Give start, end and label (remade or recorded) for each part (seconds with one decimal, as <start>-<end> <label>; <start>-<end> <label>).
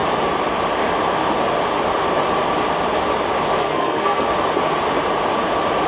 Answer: 0.0-3.6 recorded; 3.6-4.3 remade; 4.3-5.9 recorded